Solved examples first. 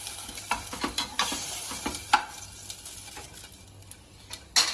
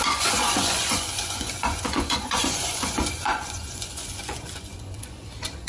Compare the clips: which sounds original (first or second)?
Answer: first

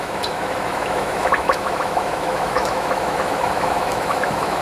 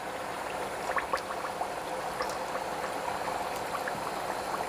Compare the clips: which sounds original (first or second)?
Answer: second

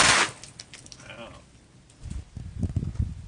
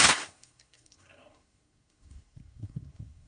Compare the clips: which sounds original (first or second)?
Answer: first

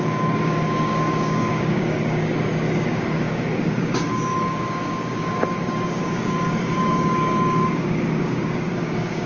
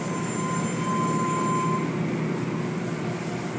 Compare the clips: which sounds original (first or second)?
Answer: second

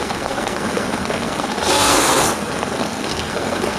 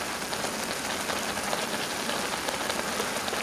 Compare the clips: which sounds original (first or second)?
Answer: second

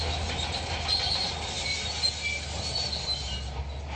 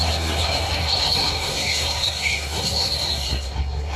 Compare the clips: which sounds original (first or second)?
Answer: first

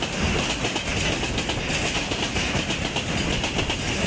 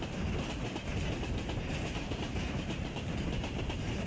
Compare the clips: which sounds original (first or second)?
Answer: first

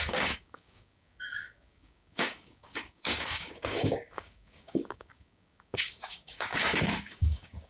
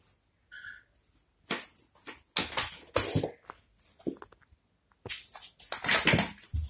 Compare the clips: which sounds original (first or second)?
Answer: second